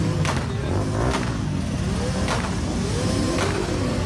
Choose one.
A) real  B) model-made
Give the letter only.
A